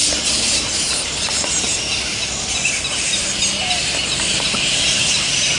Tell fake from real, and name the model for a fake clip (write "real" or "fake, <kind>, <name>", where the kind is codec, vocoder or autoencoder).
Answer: real